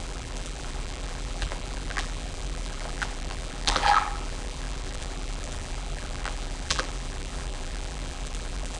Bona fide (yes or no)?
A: no